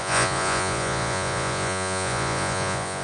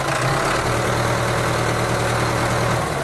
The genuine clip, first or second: second